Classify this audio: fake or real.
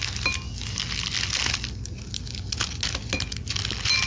real